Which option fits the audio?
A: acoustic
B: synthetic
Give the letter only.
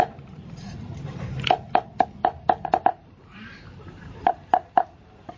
B